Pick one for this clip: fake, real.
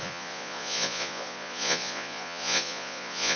fake